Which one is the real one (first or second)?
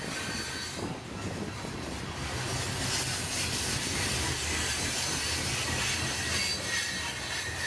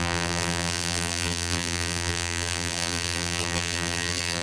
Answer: first